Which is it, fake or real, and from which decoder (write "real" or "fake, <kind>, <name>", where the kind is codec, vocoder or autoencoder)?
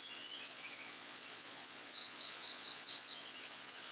fake, vocoder, Vocos